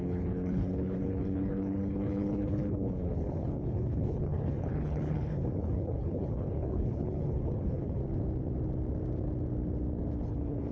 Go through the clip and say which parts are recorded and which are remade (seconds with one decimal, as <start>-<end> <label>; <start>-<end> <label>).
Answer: 0.0-8.0 remade; 8.0-10.2 recorded; 10.2-10.7 remade